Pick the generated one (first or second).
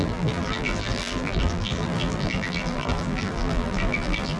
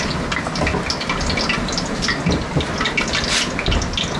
first